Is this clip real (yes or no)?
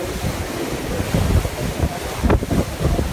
yes